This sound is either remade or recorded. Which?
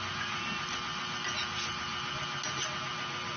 recorded